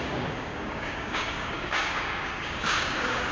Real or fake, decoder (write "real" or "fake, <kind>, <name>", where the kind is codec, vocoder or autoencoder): fake, codec, DAC